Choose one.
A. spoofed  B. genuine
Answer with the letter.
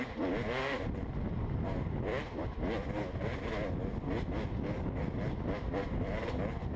B